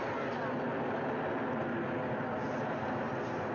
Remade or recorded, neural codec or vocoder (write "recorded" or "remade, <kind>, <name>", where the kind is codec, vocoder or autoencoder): recorded